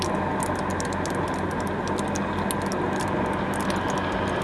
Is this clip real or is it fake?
real